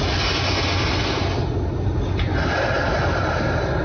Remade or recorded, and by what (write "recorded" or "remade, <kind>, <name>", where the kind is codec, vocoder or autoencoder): recorded